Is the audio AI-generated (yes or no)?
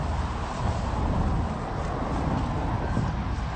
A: no